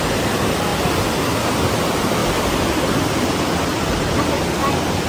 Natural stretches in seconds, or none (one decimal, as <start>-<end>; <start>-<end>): 0.0-2.2; 3.3-3.7; 4.3-5.1